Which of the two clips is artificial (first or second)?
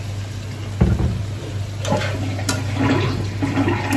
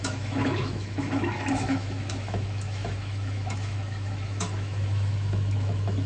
second